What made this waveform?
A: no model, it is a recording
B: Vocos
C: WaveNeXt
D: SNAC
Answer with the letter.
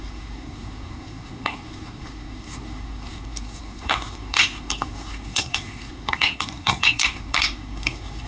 D